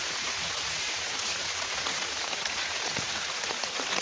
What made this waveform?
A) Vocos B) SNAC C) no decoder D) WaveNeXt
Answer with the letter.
A